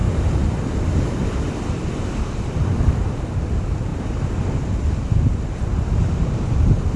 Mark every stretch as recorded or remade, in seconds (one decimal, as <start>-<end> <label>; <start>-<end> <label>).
0.0-7.0 recorded